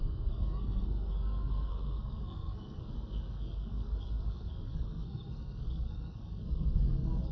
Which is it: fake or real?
fake